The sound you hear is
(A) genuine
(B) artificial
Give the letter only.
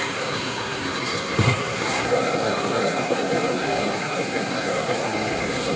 B